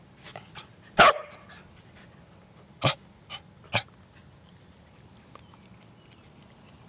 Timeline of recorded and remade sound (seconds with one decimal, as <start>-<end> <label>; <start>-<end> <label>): 0.0-6.9 recorded